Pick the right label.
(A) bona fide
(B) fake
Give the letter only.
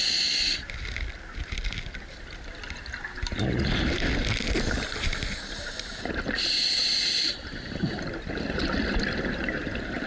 A